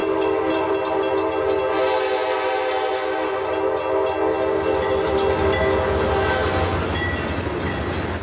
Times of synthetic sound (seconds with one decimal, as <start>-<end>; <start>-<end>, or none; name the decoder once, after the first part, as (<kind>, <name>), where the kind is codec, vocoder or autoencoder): none